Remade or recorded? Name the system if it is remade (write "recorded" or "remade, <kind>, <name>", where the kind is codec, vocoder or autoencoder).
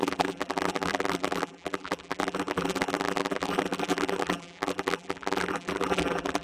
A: remade, vocoder, BigVGAN v2